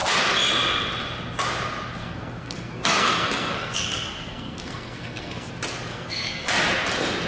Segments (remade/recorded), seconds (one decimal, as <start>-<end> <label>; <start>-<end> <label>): 0.0-2.0 recorded; 2.0-5.5 remade; 5.5-5.9 recorded; 5.9-6.4 remade; 6.4-7.3 recorded